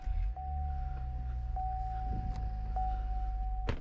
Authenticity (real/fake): real